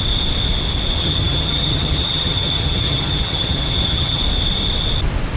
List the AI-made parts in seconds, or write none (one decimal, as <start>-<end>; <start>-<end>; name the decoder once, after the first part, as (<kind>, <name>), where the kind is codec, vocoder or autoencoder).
1.0-4.2 (vocoder, HiFi-GAN)